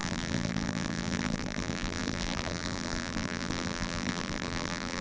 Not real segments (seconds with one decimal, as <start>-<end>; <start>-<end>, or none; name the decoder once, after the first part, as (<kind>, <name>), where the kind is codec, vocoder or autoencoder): 0.0-5.0 (vocoder, BigVGAN v2)